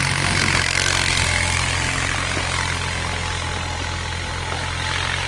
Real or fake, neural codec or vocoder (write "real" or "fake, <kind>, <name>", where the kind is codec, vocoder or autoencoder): real